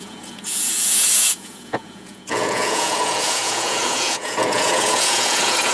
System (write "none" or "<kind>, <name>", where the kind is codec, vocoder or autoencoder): vocoder, Vocos